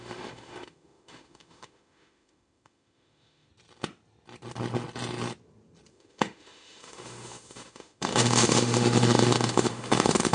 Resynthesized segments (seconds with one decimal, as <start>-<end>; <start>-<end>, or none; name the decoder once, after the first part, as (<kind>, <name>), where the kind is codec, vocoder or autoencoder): 0.0-3.5 (autoencoder, DAC-VAE); 5.9-10.3

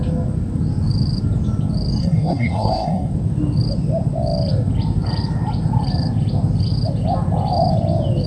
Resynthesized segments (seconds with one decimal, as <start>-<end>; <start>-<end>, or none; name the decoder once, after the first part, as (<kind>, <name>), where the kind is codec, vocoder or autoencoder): 2.0-3.1 (codec, SNAC)

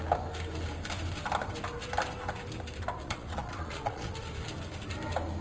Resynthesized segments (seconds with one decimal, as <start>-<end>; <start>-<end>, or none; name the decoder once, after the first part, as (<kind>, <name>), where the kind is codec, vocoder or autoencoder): 3.0-4.1 (vocoder, Vocos)